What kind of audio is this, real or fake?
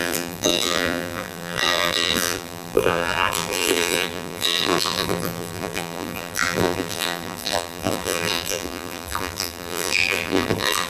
fake